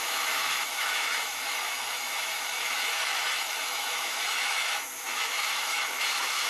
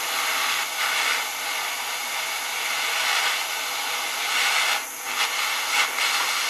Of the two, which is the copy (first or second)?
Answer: first